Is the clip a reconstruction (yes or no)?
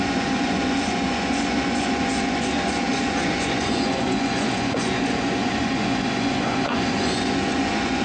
yes